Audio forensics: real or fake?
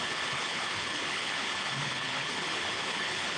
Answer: fake